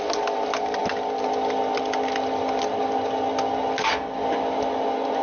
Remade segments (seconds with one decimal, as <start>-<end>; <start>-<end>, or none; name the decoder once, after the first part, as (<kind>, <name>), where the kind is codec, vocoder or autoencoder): none